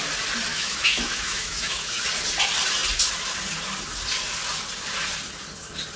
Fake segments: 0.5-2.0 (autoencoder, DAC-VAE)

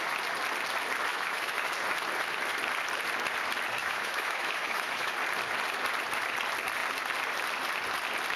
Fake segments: 1.1-1.7 (autoencoder, DAC-VAE); 3.8-5.1

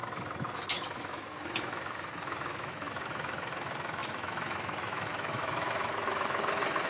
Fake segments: 0.5-6.9 (autoencoder, DAC-VAE)

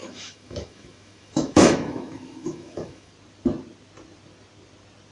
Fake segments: 0.0-3.1 (autoencoder, DAC-VAE)

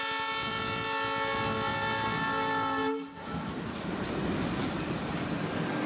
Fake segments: none

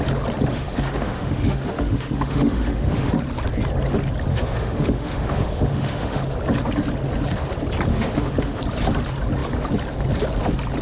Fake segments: 0.5-3.1 (autoencoder, DAC-VAE); 4.3-6.2; 7.9-8.6